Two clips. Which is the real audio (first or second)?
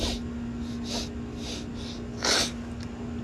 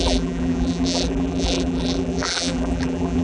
first